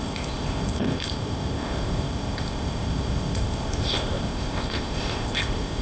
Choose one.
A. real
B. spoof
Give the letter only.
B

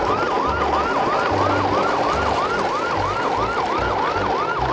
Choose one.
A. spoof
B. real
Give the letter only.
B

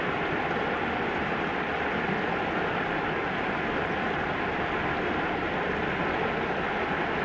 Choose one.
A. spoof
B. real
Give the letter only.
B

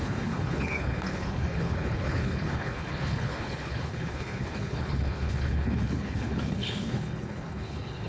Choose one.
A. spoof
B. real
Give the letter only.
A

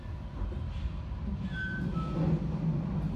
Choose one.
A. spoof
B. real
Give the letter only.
B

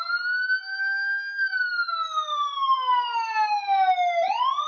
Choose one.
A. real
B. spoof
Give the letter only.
A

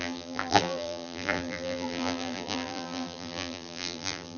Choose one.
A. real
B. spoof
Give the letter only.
B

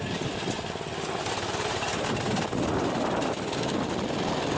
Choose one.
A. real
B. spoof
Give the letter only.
A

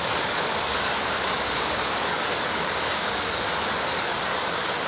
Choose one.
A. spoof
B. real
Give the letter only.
A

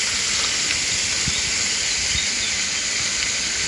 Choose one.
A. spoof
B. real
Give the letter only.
B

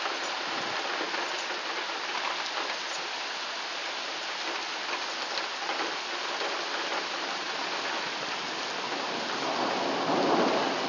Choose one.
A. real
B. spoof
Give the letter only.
A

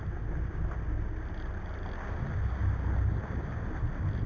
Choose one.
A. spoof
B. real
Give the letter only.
B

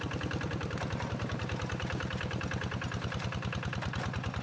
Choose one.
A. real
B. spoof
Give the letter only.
A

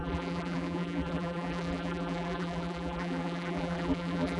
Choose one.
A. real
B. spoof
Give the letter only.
B